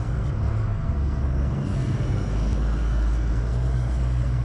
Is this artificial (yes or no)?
yes